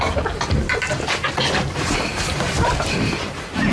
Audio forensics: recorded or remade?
recorded